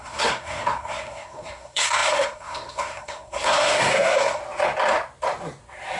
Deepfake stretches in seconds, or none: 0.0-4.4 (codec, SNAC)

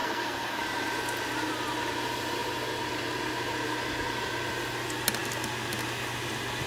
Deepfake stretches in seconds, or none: 0.0-0.6 (codec, SNAC)

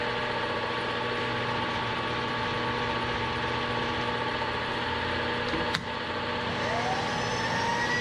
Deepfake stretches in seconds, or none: none

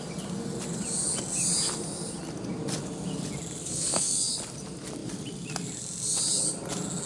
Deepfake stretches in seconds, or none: 3.6-4.3 (codec, SNAC)

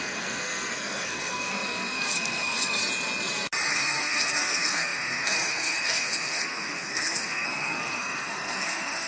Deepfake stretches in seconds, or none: 0.0-2.8 (codec, SNAC); 3.7-9.1